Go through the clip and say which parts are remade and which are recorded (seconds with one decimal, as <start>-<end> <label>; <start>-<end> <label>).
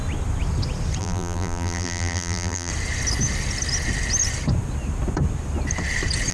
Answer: 0.0-1.0 recorded; 1.0-2.7 remade; 2.7-6.3 recorded